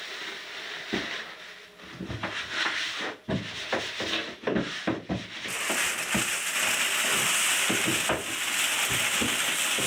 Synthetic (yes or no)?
no